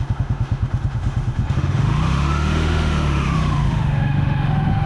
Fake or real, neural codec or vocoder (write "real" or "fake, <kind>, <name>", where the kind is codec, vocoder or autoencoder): fake, autoencoder, DAC-VAE